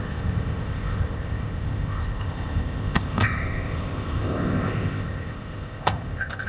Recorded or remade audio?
remade